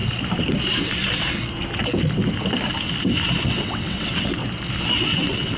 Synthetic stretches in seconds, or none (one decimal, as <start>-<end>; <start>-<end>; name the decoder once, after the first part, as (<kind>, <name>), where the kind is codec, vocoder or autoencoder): 3.4-4.4 (vocoder, WaveNeXt); 5.0-5.6